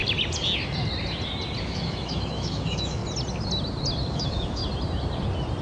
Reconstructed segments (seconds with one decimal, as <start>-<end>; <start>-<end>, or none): 1.6-3.0; 4.1-4.6

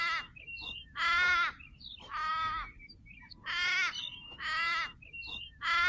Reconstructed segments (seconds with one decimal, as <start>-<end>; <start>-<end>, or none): none